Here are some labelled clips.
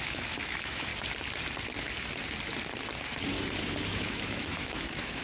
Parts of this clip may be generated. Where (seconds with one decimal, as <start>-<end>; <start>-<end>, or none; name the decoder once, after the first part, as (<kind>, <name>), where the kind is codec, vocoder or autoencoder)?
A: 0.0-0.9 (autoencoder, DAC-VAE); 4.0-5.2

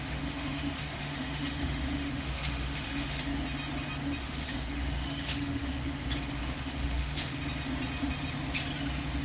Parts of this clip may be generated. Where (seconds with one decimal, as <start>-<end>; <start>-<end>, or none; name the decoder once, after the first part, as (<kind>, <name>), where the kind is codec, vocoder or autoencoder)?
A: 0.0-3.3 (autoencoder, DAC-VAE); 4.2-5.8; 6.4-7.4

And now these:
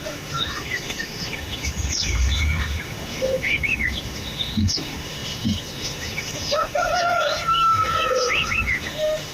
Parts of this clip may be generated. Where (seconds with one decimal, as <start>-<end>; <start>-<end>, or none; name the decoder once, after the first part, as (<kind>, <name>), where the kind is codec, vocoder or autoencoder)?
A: 0.0-9.3 (autoencoder, DAC-VAE)